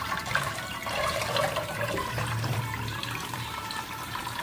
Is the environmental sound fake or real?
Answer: fake